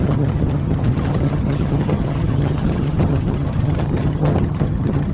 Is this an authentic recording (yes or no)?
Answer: no